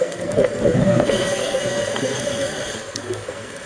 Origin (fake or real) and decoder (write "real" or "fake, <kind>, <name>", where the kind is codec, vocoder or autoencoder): fake, codec, SNAC